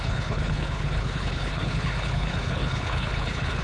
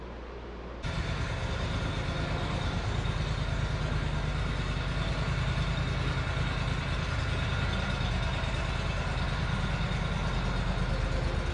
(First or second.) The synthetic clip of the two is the first